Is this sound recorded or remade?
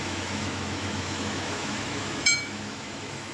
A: remade